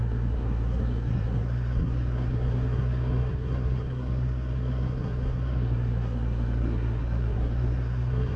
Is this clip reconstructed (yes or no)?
yes